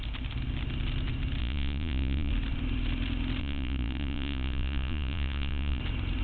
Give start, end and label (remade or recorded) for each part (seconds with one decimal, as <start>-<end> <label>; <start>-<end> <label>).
0.0-1.4 recorded; 1.4-2.3 remade; 2.3-3.4 recorded; 3.4-5.8 remade; 5.8-6.2 recorded